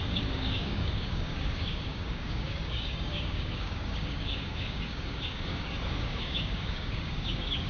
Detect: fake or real fake